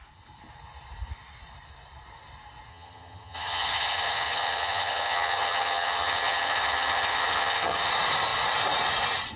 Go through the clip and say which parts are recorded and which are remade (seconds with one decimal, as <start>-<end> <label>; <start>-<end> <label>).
0.0-2.7 recorded; 2.7-7.9 remade; 7.9-9.4 recorded